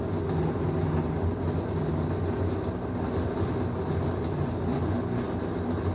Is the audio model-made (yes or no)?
no